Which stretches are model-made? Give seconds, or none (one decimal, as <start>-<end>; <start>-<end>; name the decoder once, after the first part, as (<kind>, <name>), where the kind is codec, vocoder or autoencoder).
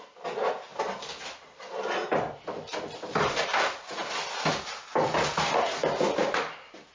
none